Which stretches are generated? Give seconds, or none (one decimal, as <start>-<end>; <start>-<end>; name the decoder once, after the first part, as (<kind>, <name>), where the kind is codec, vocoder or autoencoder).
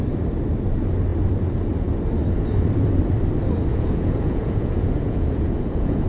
3.7-6.1 (vocoder, Vocos)